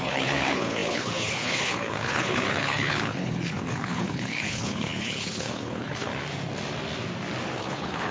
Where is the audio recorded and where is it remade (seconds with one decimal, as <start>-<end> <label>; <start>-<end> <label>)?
0.0-6.1 remade; 6.1-7.6 recorded; 7.6-8.1 remade